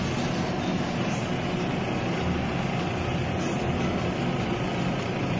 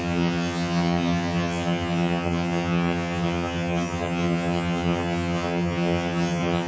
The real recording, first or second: first